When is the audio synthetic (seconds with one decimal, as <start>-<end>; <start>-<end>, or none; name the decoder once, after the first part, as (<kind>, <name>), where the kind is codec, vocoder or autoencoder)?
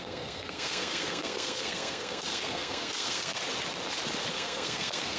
0.0-3.4 (codec, SNAC); 4.3-5.2